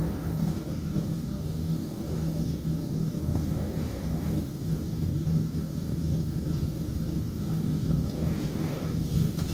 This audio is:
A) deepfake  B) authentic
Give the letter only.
A